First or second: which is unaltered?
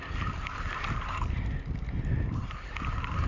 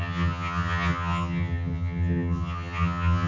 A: first